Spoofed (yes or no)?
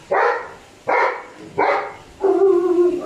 no